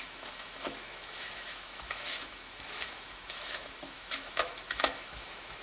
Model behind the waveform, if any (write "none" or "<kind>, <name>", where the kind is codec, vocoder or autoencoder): autoencoder, DAC-VAE